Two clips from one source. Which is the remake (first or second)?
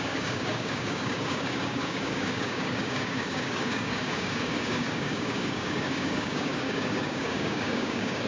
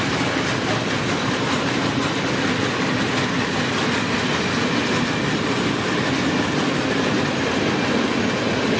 first